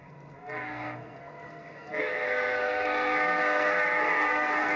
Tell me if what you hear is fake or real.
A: fake